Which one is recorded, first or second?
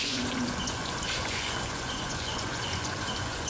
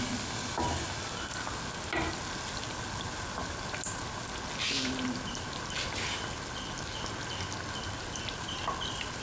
second